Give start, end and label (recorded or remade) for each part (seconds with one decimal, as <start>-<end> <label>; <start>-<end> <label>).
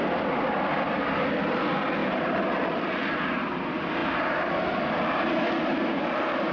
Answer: 0.0-2.0 recorded; 2.0-3.0 remade; 3.0-6.5 recorded